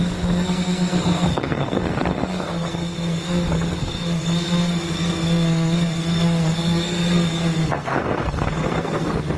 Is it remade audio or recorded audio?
remade